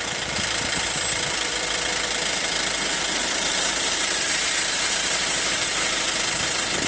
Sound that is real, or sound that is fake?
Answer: fake